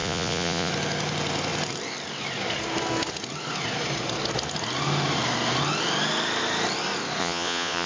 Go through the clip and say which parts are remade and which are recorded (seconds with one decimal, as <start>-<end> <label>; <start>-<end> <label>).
0.0-0.7 remade; 0.7-7.2 recorded; 7.2-7.9 remade